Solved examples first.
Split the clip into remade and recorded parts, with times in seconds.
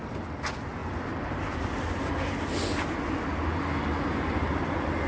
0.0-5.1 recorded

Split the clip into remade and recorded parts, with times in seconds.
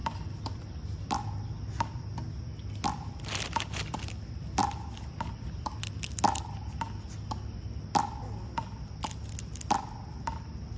0.0-10.8 recorded